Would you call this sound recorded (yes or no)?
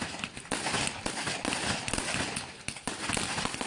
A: yes